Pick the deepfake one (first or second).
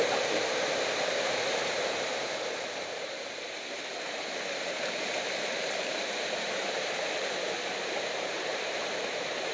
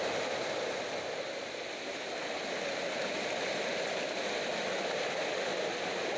first